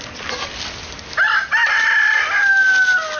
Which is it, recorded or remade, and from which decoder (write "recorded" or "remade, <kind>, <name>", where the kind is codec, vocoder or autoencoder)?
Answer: recorded